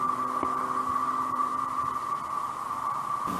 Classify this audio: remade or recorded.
remade